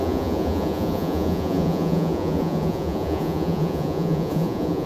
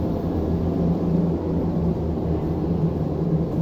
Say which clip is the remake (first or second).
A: first